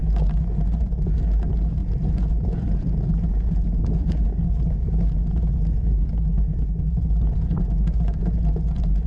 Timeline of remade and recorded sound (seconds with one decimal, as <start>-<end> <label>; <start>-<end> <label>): 0.0-1.8 recorded; 1.8-3.0 remade; 3.0-9.1 recorded

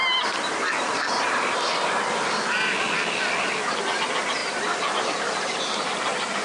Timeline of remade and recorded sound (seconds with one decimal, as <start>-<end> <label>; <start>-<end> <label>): 0.0-6.4 recorded

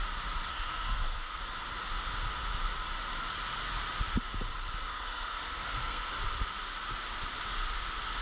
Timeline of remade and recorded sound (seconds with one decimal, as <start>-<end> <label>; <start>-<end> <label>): 0.0-0.5 recorded; 0.5-1.4 remade; 1.4-4.9 recorded; 4.9-6.1 remade; 6.1-8.2 recorded

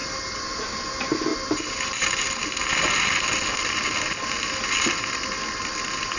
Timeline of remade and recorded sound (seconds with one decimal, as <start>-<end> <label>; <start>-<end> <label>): 0.0-6.2 recorded

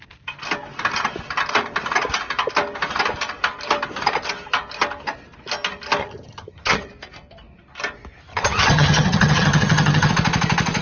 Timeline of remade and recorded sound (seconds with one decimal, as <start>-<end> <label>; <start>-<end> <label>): 0.0-6.0 recorded; 6.0-6.9 remade; 6.9-8.3 recorded; 8.3-10.1 remade; 10.1-10.8 recorded

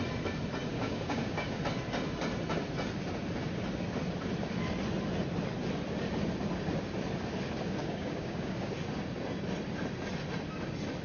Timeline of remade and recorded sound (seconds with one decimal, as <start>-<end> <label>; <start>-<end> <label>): 0.0-0.7 recorded; 0.7-1.6 remade; 1.6-7.8 recorded; 7.8-8.7 remade; 8.7-11.0 recorded

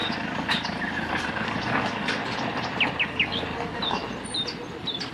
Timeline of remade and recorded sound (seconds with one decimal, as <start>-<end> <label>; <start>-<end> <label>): 0.0-2.2 remade; 2.2-3.0 recorded; 3.0-4.0 remade; 4.0-5.1 recorded

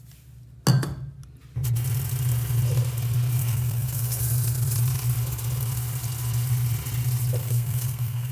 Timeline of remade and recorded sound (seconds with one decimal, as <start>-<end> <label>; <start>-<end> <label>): 0.0-3.4 recorded; 3.4-4.2 remade; 4.2-7.4 recorded; 7.4-8.3 remade